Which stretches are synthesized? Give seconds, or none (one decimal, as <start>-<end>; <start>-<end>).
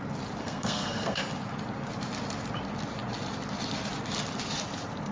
0.4-1.2